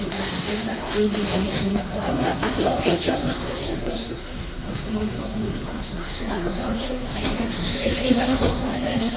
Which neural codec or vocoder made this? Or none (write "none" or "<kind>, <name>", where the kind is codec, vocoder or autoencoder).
codec, SNAC